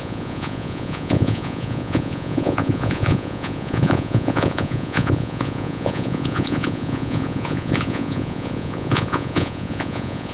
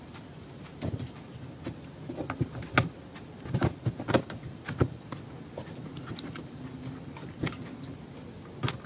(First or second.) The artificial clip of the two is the first